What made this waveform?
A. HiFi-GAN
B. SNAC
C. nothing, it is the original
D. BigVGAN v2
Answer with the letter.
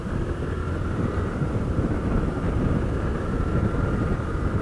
D